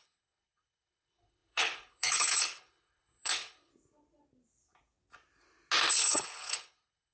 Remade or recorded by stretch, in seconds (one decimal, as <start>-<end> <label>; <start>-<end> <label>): 0.0-3.7 remade; 3.7-5.9 recorded; 5.9-7.1 remade